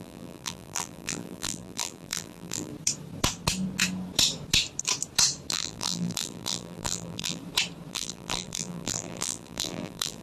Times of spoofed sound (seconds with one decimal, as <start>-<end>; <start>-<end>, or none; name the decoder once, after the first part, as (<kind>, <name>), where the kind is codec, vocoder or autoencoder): 0.0-2.7 (vocoder, BigVGAN v2); 5.5-7.4; 7.9-10.2